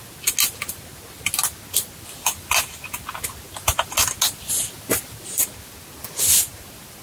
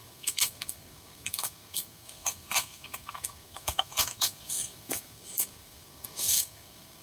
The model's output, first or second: second